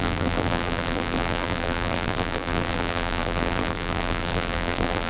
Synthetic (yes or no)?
yes